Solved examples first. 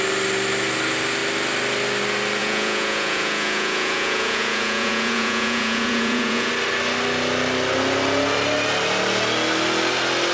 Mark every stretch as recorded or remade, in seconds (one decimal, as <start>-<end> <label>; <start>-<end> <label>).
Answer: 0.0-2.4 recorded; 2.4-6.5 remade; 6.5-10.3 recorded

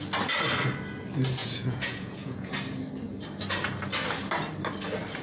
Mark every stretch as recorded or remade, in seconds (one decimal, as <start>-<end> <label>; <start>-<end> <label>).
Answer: 0.0-1.4 recorded; 1.4-2.5 remade; 2.5-5.2 recorded

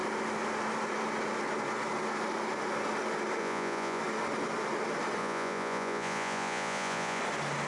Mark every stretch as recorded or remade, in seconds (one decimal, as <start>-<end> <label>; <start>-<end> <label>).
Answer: 0.0-3.4 recorded; 3.4-4.0 remade; 4.0-5.2 recorded; 5.2-7.2 remade; 7.2-7.7 recorded

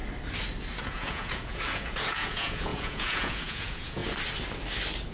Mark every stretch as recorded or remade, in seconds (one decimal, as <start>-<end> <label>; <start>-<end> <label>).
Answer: 0.0-0.8 recorded; 0.8-4.0 remade; 4.0-5.1 recorded

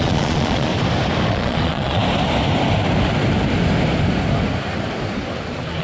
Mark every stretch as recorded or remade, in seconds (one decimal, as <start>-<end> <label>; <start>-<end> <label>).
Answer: 0.0-0.7 remade; 0.7-1.3 recorded; 1.3-2.0 remade; 2.0-5.8 recorded